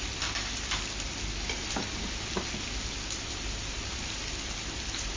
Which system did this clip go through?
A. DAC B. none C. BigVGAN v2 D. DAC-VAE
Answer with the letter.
B